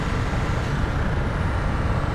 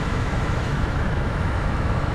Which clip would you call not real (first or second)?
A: second